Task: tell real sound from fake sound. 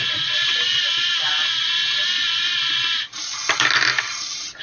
real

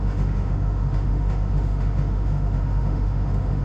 fake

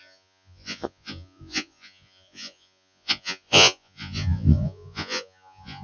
fake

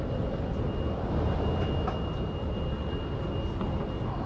real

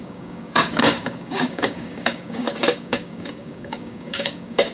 fake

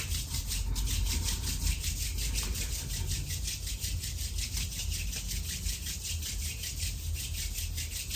real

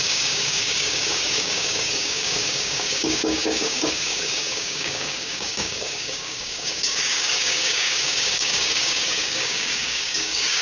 fake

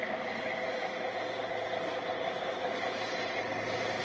real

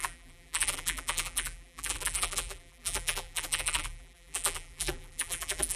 fake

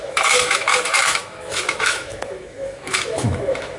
fake